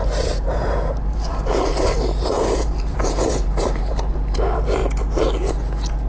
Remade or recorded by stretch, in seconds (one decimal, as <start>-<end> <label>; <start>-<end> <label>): 0.0-4.8 remade; 4.8-6.1 recorded